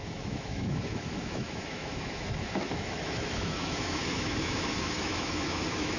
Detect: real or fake fake